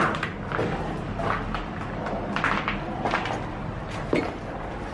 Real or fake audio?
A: real